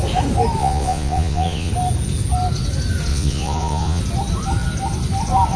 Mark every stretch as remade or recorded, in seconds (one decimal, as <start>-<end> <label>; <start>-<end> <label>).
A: 0.0-0.6 recorded; 0.6-1.7 remade; 1.7-3.1 recorded; 3.1-4.0 remade; 4.0-5.6 recorded